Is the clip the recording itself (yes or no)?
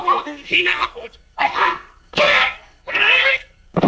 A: no